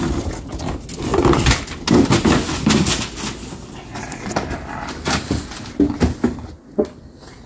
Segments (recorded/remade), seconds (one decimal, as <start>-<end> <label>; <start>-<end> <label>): 0.0-7.5 recorded